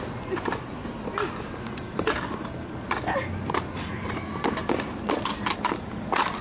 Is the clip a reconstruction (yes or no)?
no